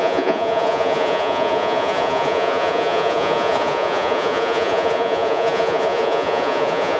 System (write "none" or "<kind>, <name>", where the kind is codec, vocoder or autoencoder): vocoder, Vocos